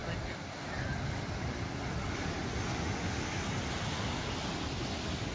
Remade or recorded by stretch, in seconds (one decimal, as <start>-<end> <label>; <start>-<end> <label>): 0.0-5.3 recorded